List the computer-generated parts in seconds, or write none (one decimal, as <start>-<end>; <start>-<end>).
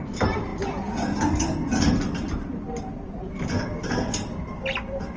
none